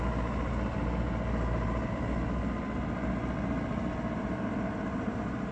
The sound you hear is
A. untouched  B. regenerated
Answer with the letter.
A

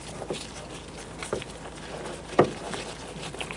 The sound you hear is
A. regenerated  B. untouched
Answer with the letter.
B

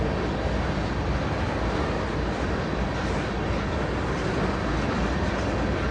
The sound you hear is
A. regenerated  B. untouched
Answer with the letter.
B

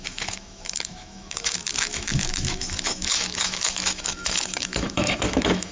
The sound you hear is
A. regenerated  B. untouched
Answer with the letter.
A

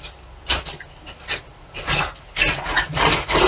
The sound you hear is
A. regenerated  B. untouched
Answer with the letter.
B